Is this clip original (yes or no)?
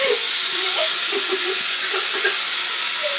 no